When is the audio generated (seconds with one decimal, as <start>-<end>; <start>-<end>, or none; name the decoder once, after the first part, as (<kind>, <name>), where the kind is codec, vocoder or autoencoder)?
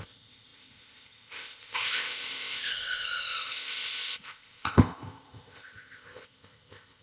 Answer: 0.0-7.0 (codec, ZipCodec)